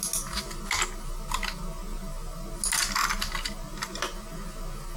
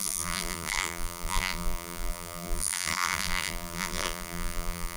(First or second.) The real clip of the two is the first